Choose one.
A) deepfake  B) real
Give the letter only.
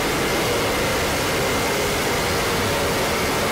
B